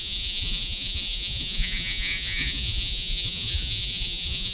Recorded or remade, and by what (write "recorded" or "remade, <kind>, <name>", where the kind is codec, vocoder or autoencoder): remade, vocoder, Vocos